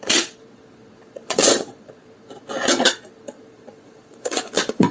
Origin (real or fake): fake